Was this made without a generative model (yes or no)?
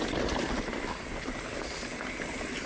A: yes